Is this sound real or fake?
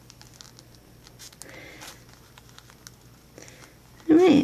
real